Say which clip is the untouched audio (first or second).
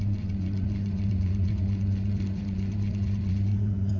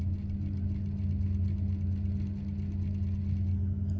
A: second